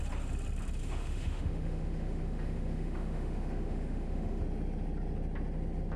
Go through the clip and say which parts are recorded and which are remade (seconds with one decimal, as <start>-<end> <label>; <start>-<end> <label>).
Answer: 0.0-0.8 recorded; 0.8-4.4 remade; 4.4-6.0 recorded